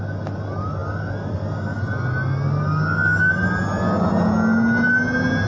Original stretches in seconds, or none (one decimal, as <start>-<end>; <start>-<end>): 0.0-5.5